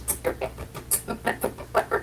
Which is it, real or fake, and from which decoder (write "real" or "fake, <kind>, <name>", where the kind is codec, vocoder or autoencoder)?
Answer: real